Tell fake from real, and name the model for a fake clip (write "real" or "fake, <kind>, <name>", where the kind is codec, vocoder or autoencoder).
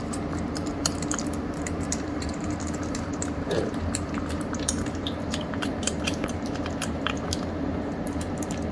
fake, vocoder, BigVGAN v2